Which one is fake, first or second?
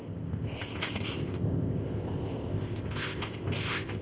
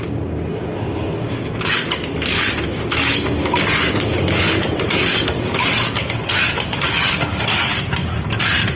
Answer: first